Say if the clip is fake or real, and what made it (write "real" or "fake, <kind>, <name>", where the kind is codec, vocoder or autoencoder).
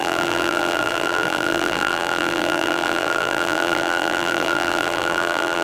fake, vocoder, BigVGAN v2